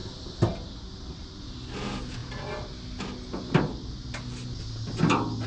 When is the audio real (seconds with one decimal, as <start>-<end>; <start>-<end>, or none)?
0.0-5.5